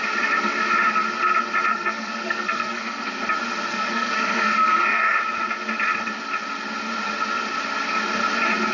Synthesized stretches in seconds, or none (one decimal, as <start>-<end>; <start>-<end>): 1.7-3.1; 3.7-5.2